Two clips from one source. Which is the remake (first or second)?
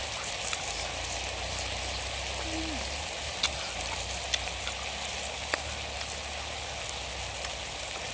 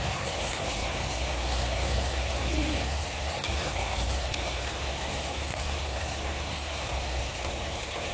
second